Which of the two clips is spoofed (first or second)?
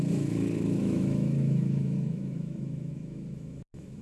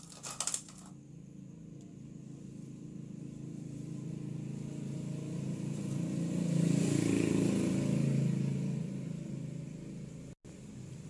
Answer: first